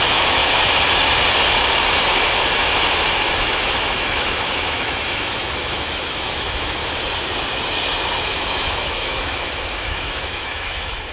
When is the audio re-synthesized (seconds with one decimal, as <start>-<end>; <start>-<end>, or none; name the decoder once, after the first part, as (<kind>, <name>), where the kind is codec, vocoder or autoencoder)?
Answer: 0.0-0.4 (autoencoder, DAC-VAE); 3.3-6.8; 8.2-11.1